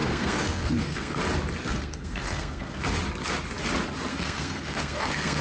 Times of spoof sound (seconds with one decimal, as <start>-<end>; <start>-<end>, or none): 0.0-1.2; 1.6-2.8; 4.1-5.4